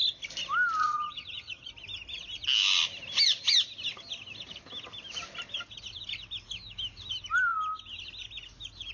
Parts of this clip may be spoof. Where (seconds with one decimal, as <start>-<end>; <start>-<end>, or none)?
0.8-1.7